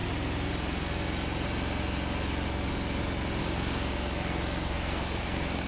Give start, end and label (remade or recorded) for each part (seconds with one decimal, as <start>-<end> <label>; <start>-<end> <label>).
0.0-3.4 recorded; 3.4-5.7 remade